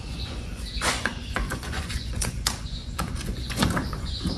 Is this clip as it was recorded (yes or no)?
no